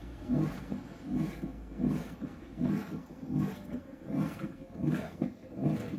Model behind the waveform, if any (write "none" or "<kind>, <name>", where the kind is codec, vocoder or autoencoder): codec, SNAC